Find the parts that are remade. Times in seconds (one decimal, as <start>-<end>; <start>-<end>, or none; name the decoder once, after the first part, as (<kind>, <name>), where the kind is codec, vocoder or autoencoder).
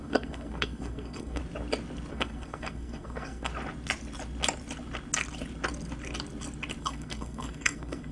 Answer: 0.0-1.4 (codec, SNAC); 2.1-3.5; 6.8-8.1